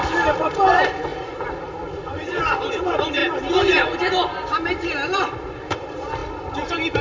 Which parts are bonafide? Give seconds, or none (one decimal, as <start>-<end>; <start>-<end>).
3.2-4.1